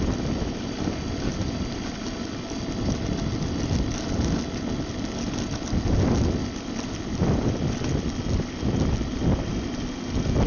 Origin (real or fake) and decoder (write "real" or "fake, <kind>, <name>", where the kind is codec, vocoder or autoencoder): real